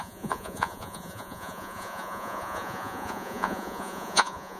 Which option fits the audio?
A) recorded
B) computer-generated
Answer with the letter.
B